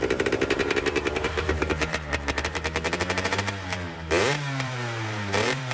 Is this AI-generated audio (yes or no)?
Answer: yes